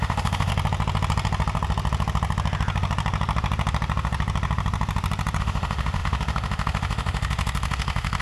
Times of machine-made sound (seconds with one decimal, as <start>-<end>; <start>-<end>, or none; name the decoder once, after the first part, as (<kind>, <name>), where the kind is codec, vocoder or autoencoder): 0.0-0.5 (autoencoder, DAC-VAE); 5.4-8.2